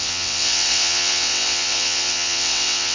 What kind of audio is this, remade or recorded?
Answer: remade